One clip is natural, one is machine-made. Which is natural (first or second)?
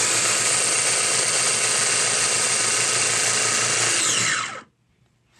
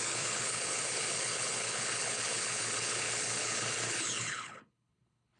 first